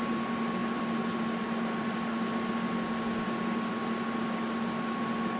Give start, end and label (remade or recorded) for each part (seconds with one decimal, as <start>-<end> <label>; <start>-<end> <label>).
0.0-0.6 recorded; 0.6-1.8 remade; 1.8-5.4 recorded